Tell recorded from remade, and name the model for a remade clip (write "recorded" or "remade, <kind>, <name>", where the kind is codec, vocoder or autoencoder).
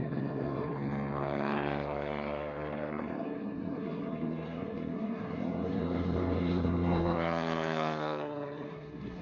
remade, codec, SNAC